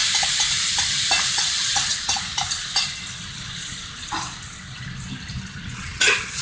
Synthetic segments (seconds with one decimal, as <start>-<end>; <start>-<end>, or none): 1.3-1.9; 5.7-6.4